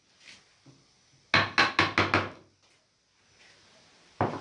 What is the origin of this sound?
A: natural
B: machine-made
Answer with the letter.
A